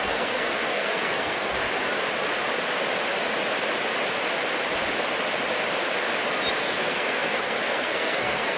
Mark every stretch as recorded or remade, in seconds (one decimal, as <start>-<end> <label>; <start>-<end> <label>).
0.0-1.6 remade; 1.6-6.6 recorded; 6.6-8.6 remade